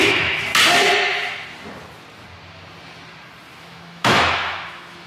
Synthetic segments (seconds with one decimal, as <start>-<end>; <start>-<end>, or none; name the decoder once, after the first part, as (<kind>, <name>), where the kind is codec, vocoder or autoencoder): 0.0-0.5 (autoencoder, DAC-VAE); 3.6-5.1